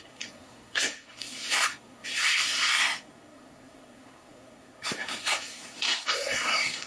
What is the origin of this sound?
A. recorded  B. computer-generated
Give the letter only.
B